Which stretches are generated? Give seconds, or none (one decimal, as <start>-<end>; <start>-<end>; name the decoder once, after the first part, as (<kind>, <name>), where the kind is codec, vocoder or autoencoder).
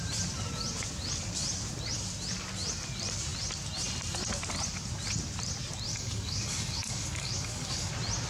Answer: 5.9-7.9 (codec, DAC)